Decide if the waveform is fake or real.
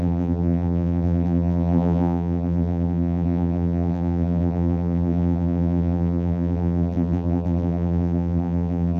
fake